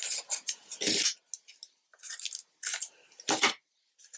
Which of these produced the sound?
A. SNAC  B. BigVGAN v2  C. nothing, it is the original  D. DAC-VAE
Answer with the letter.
C